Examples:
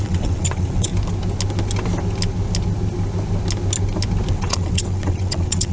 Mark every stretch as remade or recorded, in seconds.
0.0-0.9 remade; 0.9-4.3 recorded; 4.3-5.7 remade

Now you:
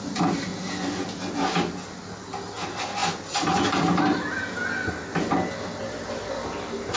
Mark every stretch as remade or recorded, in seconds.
0.0-7.0 recorded

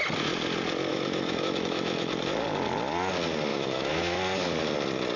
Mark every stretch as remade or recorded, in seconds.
0.0-0.9 recorded; 0.9-2.1 remade; 2.1-3.5 recorded; 3.5-4.2 remade; 4.2-5.2 recorded

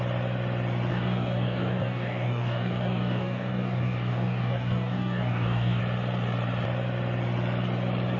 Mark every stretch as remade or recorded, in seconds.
0.0-0.9 recorded; 0.9-5.8 remade; 5.8-8.2 recorded

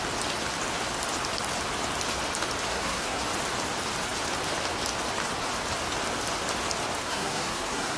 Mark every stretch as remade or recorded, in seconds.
0.0-2.7 recorded; 2.7-3.2 remade; 3.2-7.0 recorded; 7.0-8.0 remade

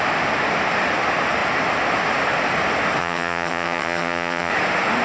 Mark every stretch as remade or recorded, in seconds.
0.0-3.0 recorded; 3.0-4.5 remade; 4.5-5.0 recorded